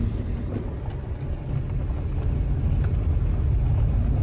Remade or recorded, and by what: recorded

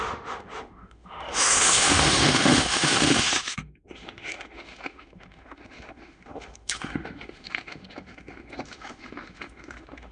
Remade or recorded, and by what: remade, autoencoder, DAC-VAE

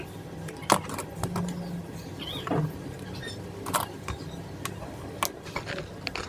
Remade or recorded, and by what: recorded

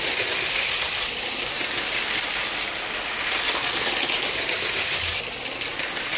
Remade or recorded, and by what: recorded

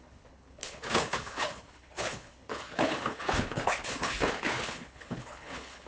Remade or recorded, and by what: remade, codec, HILCodec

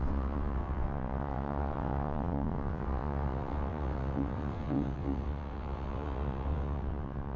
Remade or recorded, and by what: remade, vocoder, WaveNeXt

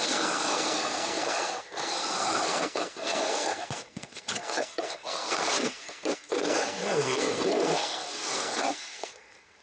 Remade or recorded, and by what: remade, codec, SNAC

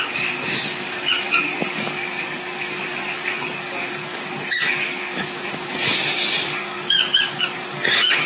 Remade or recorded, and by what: remade, codec, DAC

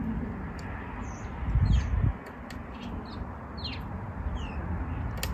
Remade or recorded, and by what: recorded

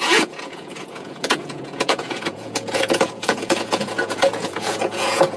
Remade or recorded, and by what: remade, vocoder, Vocos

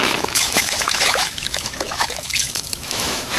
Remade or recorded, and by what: remade, autoencoder, DAC-VAE